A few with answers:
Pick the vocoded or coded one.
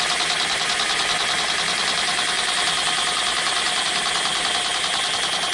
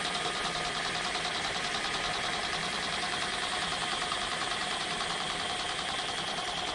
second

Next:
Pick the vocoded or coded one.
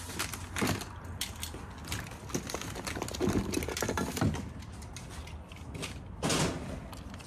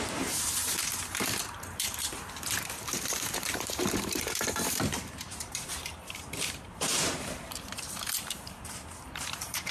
second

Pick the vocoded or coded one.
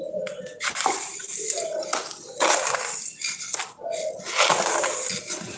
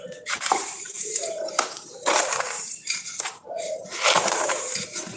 second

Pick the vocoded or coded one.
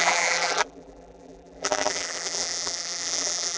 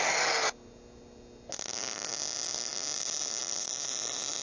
first